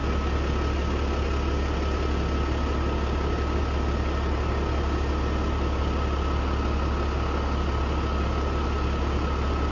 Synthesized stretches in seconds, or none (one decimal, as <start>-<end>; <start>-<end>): none

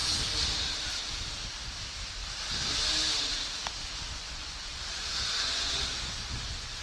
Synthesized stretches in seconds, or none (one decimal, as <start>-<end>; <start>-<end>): 4.1-6.8

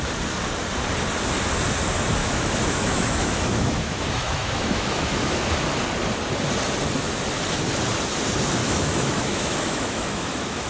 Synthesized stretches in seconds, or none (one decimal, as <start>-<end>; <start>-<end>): 2.2-5.5; 8.6-10.7